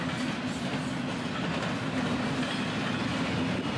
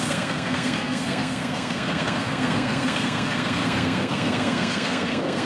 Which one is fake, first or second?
second